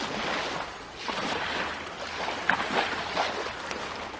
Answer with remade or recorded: recorded